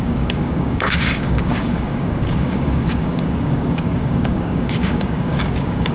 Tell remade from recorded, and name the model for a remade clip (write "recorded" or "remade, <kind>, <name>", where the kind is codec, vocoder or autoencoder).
remade, codec, DAC